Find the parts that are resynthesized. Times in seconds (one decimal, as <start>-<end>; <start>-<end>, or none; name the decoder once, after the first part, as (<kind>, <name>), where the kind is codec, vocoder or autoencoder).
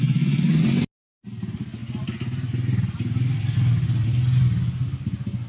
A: none